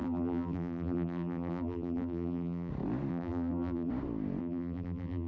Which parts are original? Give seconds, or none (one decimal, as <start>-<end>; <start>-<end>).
2.7-3.1; 3.9-4.4

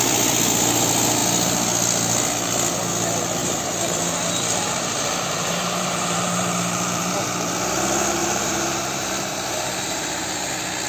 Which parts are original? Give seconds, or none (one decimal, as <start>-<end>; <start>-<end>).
0.0-3.4; 7.1-8.2; 10.5-10.9

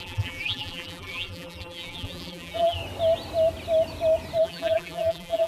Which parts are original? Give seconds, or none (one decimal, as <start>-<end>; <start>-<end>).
2.8-4.4

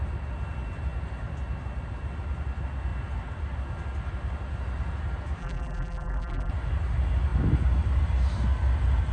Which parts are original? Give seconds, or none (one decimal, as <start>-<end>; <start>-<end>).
0.0-5.4; 6.5-9.1

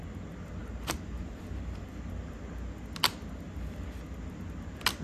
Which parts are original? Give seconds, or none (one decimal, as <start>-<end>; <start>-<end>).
0.0-0.6; 1.4-5.0

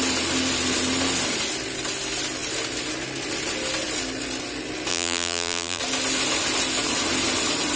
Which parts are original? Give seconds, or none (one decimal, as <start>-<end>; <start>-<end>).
0.0-4.9; 5.8-7.8